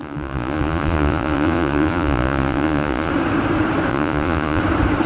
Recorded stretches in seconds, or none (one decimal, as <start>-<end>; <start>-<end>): 3.1-3.9; 4.6-5.1